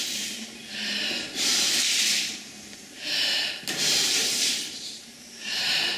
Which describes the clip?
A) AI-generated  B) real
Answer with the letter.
A